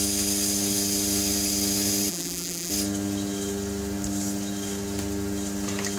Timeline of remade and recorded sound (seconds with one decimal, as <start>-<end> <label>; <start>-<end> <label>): 0.0-2.1 recorded; 2.1-2.7 remade; 2.7-6.0 recorded